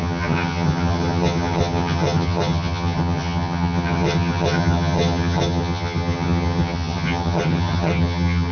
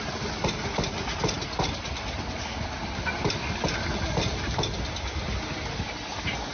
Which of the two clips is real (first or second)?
second